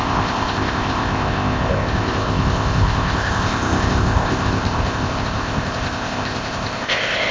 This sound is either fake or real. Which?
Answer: fake